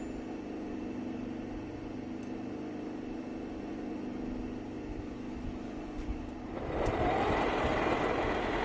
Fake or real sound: real